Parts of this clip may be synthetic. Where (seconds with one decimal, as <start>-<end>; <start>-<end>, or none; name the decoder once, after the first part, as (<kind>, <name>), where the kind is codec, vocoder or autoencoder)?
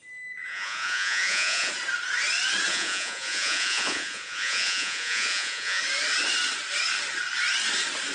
0.5-1.7 (vocoder, Vocos); 2.7-5.8